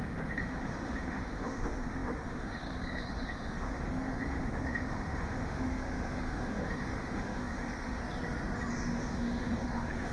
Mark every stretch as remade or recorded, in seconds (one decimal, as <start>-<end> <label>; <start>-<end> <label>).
0.0-8.0 remade; 8.0-8.7 recorded; 8.7-10.1 remade